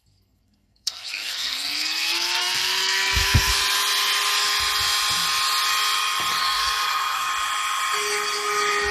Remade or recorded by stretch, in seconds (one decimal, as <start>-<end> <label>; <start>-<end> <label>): 0.0-3.6 remade; 3.6-6.4 recorded; 6.4-7.3 remade; 7.3-8.9 recorded